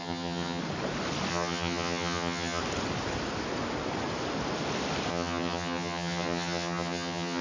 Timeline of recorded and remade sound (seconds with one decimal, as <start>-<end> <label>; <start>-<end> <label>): 0.0-0.6 remade; 0.6-1.3 recorded; 1.3-2.6 remade; 2.6-5.1 recorded; 5.1-7.4 remade